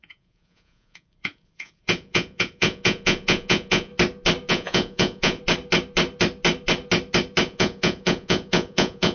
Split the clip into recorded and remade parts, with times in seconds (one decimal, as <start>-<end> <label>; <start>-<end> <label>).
0.0-3.9 remade; 3.9-4.5 recorded; 4.5-5.4 remade; 5.4-7.4 recorded; 7.4-9.1 remade